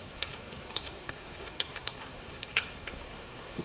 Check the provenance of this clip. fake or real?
fake